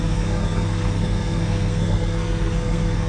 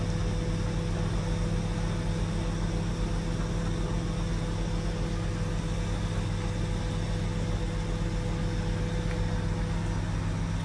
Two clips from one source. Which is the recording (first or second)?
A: second